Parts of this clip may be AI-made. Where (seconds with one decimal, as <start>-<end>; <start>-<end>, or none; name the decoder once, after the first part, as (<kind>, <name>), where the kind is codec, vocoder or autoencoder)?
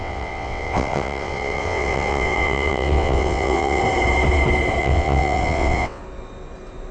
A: 0.0-3.8 (vocoder, WaveNeXt); 4.8-6.0